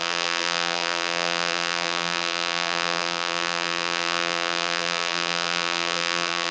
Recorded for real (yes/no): no